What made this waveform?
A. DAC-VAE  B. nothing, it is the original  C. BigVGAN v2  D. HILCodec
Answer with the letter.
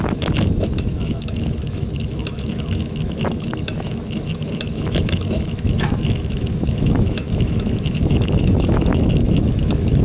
A